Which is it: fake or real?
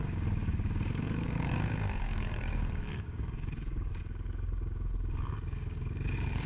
fake